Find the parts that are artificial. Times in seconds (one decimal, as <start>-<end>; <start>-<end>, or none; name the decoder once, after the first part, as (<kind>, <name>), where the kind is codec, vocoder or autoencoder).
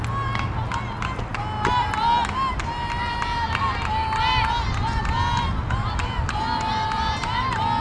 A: none